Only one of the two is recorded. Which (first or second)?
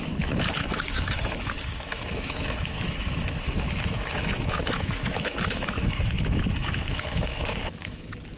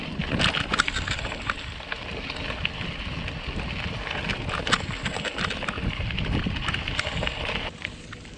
second